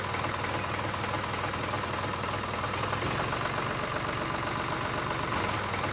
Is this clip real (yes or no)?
yes